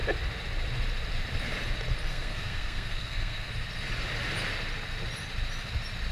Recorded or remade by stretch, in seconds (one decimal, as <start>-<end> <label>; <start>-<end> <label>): 0.0-2.1 recorded; 2.1-3.5 remade; 3.5-6.1 recorded